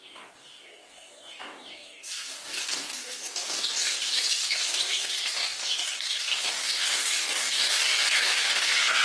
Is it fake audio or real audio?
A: fake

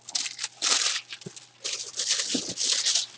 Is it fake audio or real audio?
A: real